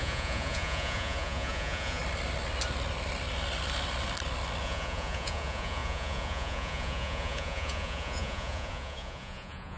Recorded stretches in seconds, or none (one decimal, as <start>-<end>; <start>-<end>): 2.0-4.6